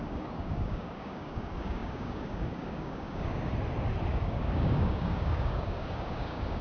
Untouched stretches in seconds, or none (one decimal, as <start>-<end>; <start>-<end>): 3.5-4.1